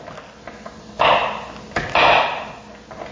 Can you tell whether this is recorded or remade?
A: recorded